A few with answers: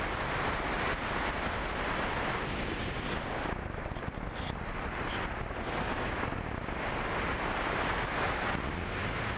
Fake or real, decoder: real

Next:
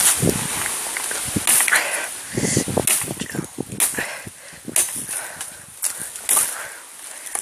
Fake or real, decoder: real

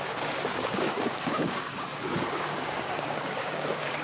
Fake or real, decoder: fake, codec, DAC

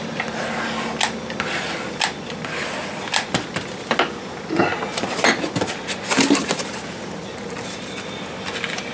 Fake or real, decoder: real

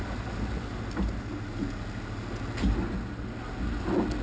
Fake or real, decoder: real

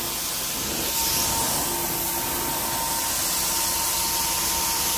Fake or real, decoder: real